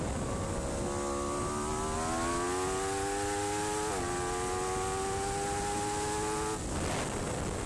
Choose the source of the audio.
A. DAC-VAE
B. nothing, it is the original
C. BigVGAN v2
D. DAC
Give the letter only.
B